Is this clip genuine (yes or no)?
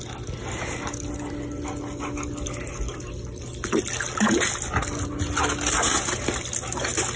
yes